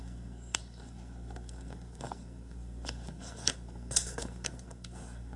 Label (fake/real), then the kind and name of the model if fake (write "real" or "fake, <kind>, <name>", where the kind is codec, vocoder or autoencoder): fake, codec, SNAC